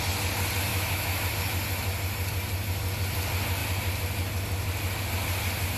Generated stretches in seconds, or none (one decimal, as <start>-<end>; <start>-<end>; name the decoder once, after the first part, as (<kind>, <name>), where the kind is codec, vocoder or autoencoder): 0.7-1.3 (autoencoder, DAC-VAE)